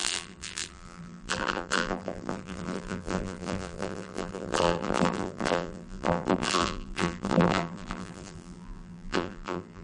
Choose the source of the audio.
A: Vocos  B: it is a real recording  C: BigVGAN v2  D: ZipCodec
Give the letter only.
C